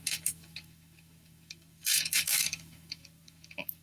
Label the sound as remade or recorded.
remade